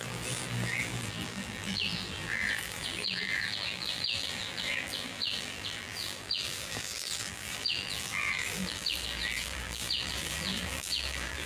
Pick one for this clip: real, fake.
fake